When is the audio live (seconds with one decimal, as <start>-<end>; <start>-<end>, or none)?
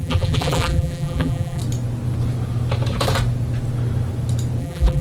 1.6-4.6